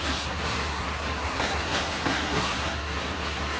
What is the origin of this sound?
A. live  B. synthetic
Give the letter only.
B